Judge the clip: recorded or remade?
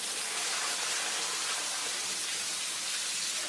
recorded